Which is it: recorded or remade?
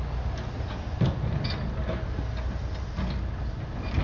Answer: recorded